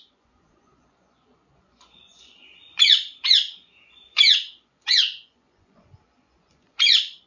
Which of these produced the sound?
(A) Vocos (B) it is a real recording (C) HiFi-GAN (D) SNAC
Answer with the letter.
A